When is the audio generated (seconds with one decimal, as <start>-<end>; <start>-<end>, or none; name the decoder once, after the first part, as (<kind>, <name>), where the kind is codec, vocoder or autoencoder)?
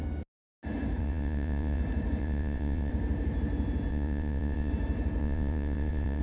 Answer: 1.0-1.8 (vocoder, WaveNeXt); 2.2-2.9; 3.9-4.7; 5.2-6.2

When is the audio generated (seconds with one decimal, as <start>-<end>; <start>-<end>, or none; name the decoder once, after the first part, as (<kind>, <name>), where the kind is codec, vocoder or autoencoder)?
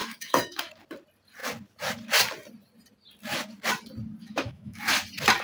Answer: 0.0-0.7 (autoencoder, DAC-VAE); 4.2-4.8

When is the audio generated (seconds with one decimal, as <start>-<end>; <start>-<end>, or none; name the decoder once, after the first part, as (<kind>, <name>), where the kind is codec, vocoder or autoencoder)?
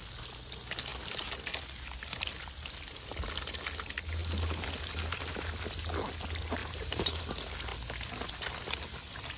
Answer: 6.6-7.2 (vocoder, BigVGAN v2)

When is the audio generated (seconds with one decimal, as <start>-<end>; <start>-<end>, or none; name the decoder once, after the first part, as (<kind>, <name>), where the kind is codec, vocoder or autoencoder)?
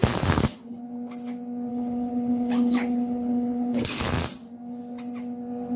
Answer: 0.0-0.8 (codec, HILCodec); 1.7-4.1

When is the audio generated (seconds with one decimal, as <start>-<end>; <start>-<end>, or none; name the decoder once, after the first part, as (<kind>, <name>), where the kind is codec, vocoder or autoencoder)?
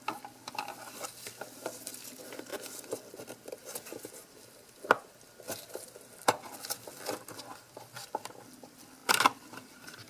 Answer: none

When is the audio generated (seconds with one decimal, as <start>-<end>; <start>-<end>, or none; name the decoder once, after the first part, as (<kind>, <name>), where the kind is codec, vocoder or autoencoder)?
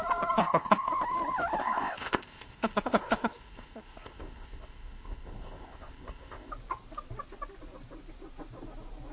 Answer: 0.4-0.9 (codec, ZipCodec); 1.6-6.5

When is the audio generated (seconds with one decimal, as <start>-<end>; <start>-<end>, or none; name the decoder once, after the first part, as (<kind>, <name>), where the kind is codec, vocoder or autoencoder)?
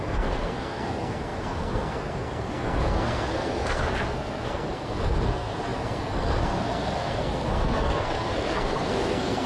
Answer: 0.0-9.5 (codec, SNAC)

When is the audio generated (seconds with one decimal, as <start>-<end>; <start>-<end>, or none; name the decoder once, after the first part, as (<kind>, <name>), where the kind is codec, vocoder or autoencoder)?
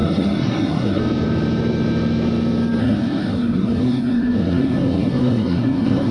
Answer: 0.0-1.0 (codec, SNAC); 2.8-6.1